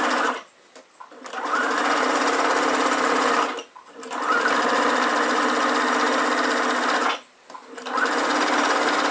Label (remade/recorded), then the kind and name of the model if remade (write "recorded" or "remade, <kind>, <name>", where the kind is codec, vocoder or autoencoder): recorded